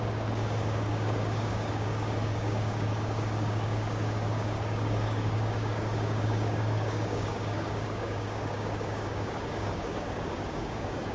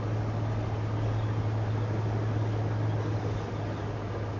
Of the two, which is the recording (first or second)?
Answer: second